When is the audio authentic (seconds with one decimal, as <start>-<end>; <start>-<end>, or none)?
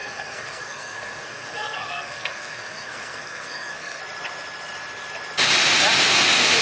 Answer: 4.0-6.6